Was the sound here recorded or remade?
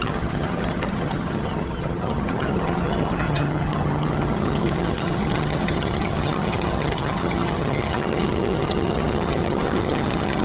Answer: remade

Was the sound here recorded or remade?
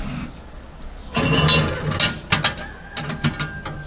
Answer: recorded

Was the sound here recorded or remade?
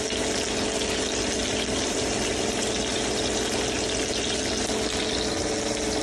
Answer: recorded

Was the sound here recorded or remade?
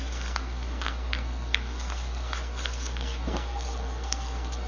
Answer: remade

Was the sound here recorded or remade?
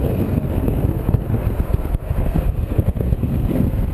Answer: remade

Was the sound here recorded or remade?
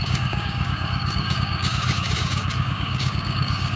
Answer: remade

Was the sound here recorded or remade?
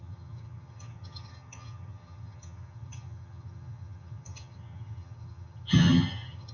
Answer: remade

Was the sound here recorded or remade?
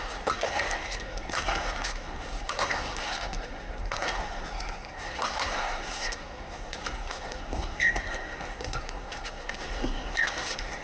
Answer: remade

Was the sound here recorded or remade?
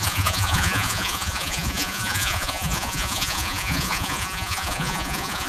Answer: remade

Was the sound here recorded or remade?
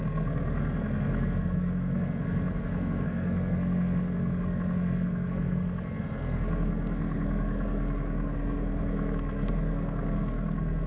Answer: remade